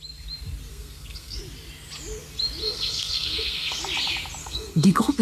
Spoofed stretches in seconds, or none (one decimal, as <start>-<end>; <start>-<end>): 0.7-1.4; 2.6-3.8; 4.4-5.2